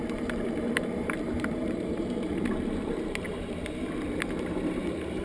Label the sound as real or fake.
fake